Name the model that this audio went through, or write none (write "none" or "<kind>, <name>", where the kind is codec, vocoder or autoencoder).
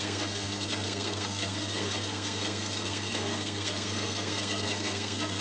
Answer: codec, SNAC